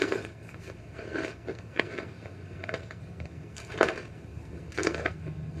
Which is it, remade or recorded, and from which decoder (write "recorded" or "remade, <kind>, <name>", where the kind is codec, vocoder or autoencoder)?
remade, codec, SNAC